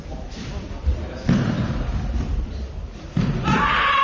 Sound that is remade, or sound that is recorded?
remade